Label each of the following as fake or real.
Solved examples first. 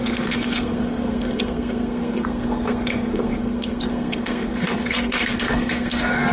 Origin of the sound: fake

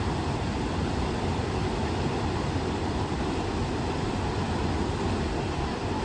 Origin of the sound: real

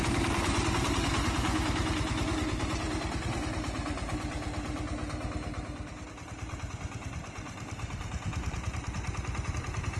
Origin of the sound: real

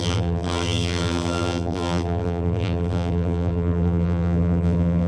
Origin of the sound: fake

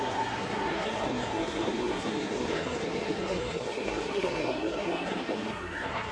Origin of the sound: fake